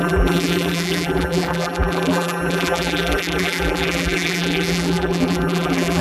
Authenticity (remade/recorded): remade